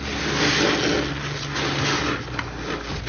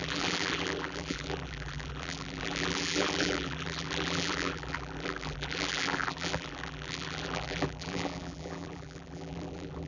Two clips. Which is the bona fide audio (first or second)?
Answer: first